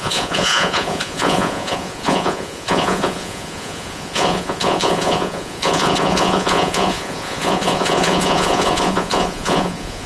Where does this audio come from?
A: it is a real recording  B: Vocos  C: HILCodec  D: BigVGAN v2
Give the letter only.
B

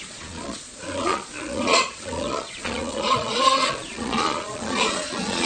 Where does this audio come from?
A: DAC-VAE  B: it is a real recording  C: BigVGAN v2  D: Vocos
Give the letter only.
D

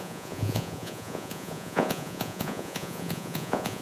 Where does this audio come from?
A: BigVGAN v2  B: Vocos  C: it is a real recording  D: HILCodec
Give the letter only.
B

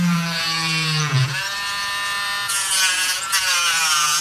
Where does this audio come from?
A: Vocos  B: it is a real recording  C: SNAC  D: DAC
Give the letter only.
A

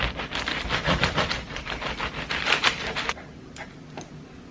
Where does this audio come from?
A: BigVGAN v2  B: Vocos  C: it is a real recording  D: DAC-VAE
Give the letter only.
C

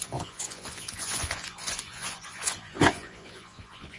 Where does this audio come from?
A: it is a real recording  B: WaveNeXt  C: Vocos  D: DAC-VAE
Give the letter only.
C